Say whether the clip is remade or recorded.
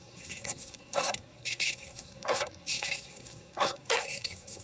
remade